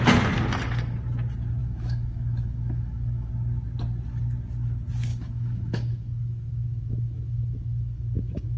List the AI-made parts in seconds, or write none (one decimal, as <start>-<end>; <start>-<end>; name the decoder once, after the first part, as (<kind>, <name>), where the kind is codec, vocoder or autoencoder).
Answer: 1.6-3.3 (autoencoder, DAC-VAE); 5.1-8.6